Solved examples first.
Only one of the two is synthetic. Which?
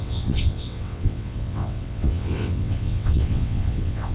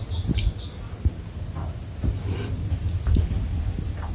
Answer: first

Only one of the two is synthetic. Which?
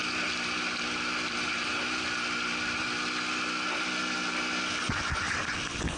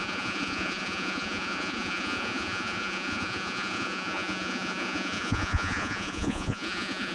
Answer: second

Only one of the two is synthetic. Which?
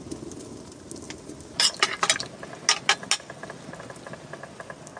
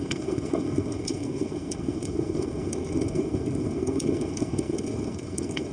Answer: second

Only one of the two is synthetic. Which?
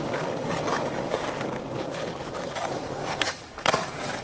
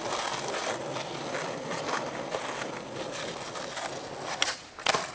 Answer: first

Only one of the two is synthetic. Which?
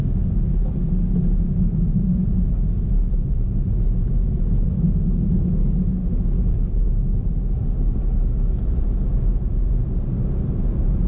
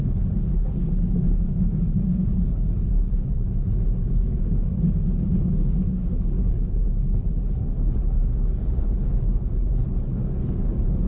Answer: second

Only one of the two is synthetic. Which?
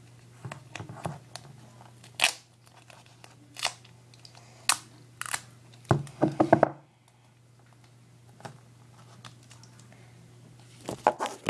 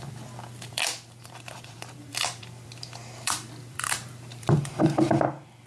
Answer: second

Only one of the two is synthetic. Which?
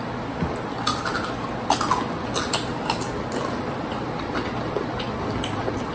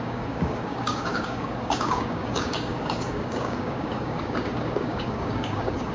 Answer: second